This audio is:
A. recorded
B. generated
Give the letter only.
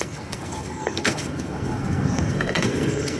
B